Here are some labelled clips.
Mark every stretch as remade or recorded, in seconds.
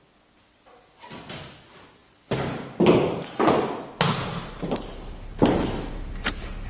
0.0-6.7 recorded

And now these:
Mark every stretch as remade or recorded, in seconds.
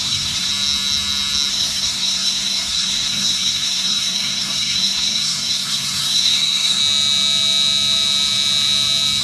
0.0-0.5 remade; 0.5-1.5 recorded; 1.5-6.8 remade; 6.8-9.2 recorded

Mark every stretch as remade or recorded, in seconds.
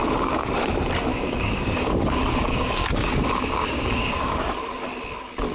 0.0-0.5 remade; 0.5-1.1 recorded; 1.1-4.4 remade; 4.4-5.5 recorded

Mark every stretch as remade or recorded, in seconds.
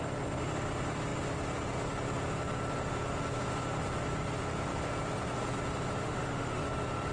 0.0-6.0 recorded; 6.0-6.6 remade; 6.6-7.1 recorded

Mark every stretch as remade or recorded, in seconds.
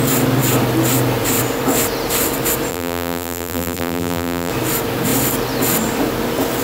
0.0-2.7 recorded; 2.7-4.5 remade; 4.5-6.6 recorded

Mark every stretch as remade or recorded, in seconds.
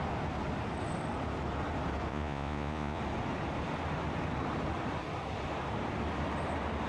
0.0-2.1 recorded; 2.1-3.0 remade; 3.0-6.9 recorded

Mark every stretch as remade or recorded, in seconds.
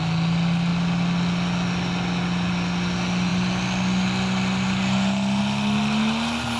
0.0-6.6 recorded